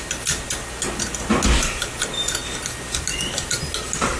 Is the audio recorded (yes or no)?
yes